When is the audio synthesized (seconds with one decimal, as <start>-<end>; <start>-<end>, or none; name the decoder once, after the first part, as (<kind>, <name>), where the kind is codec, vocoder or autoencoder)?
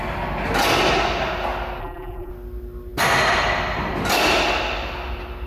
1.8-2.3 (vocoder, BigVGAN v2)